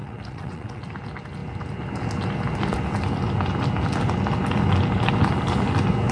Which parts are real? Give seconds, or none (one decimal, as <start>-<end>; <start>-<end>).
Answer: 0.8-6.1